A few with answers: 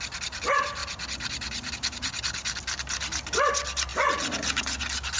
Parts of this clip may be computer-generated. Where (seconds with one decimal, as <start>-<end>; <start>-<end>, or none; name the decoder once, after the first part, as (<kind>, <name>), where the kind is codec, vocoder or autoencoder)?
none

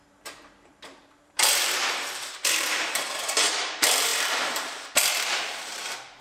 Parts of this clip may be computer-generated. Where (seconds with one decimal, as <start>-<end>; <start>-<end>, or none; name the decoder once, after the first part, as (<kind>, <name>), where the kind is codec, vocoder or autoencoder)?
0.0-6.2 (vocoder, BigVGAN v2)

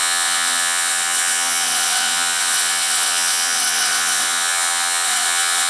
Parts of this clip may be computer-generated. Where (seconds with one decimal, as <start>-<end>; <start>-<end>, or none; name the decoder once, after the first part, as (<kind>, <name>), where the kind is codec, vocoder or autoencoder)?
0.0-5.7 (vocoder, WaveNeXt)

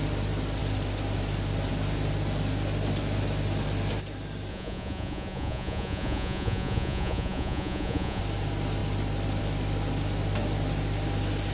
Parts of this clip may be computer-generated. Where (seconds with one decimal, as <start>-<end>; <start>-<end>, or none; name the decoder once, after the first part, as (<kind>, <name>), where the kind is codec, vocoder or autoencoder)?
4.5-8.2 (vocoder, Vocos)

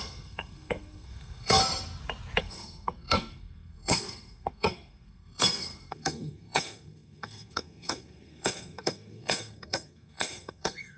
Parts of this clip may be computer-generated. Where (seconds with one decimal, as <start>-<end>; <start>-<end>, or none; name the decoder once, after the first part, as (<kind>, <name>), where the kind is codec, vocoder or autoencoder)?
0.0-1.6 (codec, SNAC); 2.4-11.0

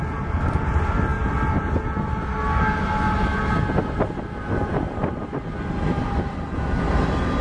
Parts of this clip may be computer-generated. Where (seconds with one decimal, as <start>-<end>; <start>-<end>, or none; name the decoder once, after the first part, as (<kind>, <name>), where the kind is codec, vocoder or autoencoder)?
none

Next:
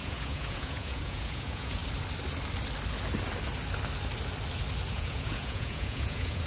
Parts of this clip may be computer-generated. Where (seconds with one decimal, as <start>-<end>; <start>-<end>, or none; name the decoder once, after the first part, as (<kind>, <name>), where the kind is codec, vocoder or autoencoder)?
0.0-1.8 (vocoder, Vocos); 4.9-6.5